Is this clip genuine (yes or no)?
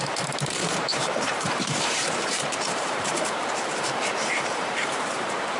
no